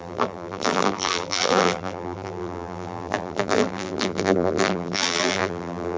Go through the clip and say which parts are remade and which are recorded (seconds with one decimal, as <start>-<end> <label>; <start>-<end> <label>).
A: 0.0-6.0 remade